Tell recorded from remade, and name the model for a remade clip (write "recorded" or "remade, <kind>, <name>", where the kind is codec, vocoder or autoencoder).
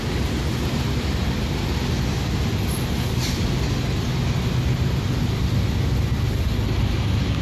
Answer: recorded